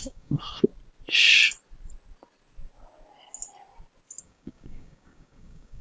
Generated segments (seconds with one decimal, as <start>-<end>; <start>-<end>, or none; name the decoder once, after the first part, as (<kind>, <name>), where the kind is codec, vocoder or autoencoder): 0.0-0.7 (codec, DAC); 4.2-5.8